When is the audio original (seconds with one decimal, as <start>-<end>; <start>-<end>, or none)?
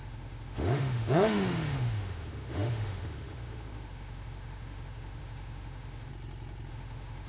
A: 6.1-6.7